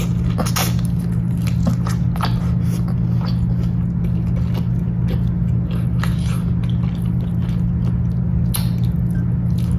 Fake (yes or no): no